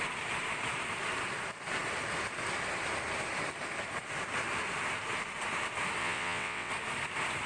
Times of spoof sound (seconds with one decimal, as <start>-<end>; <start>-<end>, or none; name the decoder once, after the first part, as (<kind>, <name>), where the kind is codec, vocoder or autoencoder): 6.0-6.7 (vocoder, WaveNeXt)

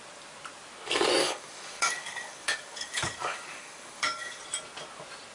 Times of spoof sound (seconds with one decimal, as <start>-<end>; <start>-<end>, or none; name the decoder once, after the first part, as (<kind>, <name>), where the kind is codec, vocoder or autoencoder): 1.2-4.4 (codec, DAC)

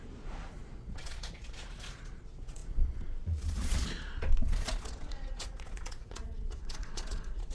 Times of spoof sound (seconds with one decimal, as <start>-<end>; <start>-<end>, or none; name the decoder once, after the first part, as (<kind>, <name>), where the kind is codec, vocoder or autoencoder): 0.0-7.5 (vocoder, Vocos)

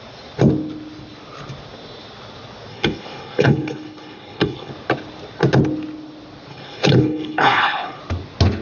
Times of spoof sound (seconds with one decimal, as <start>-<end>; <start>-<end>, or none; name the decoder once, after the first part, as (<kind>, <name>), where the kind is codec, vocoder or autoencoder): 2.7-4.7 (codec, HILCodec); 6.5-8.0